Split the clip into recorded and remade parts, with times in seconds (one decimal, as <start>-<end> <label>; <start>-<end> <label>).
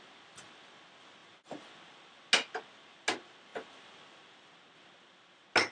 0.0-5.7 recorded